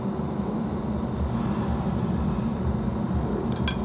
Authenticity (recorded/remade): recorded